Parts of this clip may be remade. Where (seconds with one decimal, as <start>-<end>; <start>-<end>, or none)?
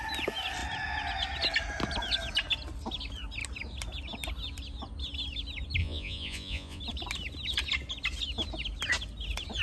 5.8-6.8